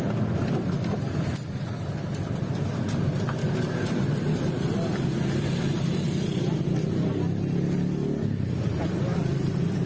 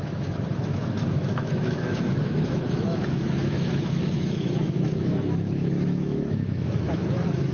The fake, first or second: second